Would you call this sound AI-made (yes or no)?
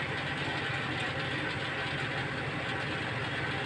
no